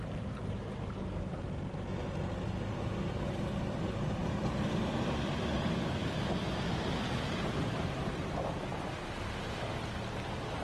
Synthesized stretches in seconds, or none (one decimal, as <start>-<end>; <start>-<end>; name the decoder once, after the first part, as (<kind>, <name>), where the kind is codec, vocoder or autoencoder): none